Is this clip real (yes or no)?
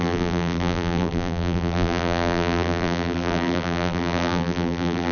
no